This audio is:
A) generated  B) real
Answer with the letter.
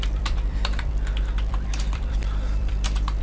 A